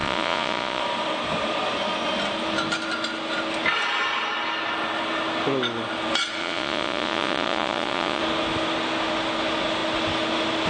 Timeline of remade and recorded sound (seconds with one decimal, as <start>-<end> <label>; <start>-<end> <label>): 0.0-0.8 remade; 0.8-6.4 recorded; 6.4-8.2 remade; 8.2-10.7 recorded